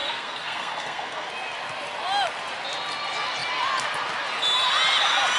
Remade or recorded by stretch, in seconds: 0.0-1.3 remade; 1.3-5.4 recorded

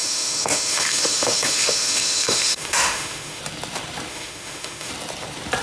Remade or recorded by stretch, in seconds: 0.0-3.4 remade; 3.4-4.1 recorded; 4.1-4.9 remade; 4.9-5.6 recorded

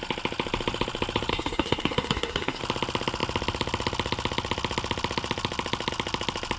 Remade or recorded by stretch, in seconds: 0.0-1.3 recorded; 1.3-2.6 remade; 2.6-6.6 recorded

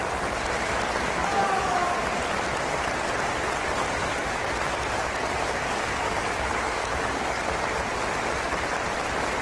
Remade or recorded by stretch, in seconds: 0.0-1.2 recorded; 1.2-2.0 remade; 2.0-5.6 recorded; 5.6-7.4 remade; 7.4-9.4 recorded

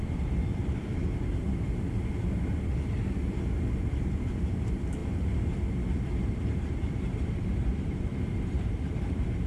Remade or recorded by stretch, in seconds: 0.0-2.5 remade; 2.5-3.8 recorded; 3.8-9.5 remade

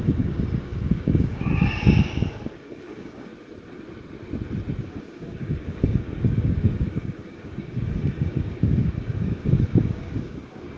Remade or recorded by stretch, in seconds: 0.0-3.3 remade; 3.3-4.8 recorded; 4.8-10.8 remade